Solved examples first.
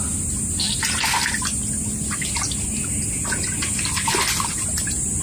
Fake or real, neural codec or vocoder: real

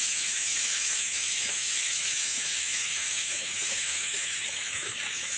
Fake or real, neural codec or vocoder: fake, autoencoder, DAC-VAE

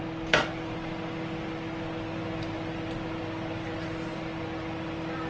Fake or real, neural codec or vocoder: real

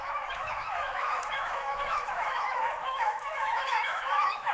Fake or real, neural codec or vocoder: fake, autoencoder, DAC-VAE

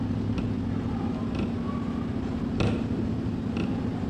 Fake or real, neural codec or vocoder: real